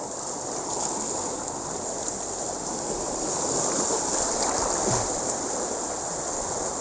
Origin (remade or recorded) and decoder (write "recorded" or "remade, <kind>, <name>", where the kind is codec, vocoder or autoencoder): recorded